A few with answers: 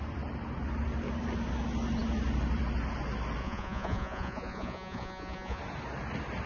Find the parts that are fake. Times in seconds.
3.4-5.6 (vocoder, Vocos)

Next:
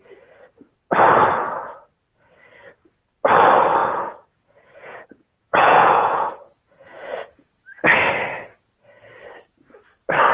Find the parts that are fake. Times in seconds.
3.8-7.5 (vocoder, Vocos)

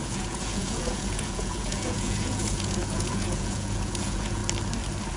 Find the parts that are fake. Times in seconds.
0.0-4.4 (vocoder, Vocos)

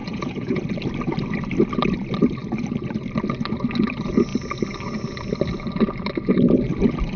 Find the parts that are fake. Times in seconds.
0.0-0.6 (vocoder, Vocos)

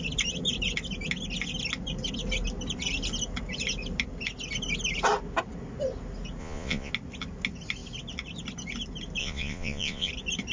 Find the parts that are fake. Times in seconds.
6.4-6.9 (vocoder, Vocos); 9.2-10.1